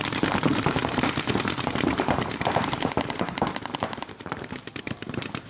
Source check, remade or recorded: remade